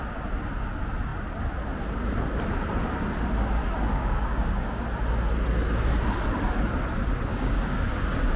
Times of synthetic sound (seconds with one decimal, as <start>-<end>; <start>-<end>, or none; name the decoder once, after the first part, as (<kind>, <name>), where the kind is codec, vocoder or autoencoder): 3.6-4.8 (codec, DAC); 7.3-8.4